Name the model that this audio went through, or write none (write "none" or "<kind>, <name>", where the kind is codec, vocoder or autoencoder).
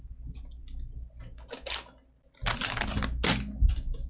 none